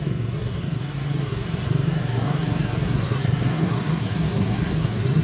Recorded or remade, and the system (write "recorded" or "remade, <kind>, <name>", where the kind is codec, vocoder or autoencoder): remade, codec, SNAC